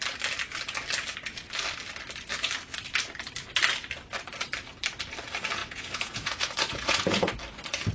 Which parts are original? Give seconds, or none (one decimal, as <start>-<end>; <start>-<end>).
0.0-5.6; 7.4-7.9